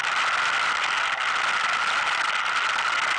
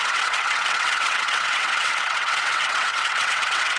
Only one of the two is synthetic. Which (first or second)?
second